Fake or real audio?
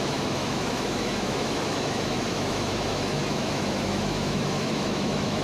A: fake